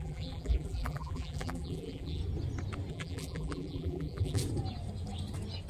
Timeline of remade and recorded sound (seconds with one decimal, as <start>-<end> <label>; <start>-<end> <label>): 0.0-2.2 remade; 2.2-2.9 recorded; 2.9-4.4 remade; 4.4-5.7 recorded